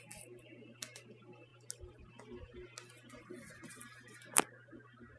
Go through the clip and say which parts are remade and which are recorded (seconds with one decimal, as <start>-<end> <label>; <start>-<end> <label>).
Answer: 0.0-5.2 recorded